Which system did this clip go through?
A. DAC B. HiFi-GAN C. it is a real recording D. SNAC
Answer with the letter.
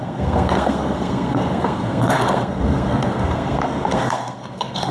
D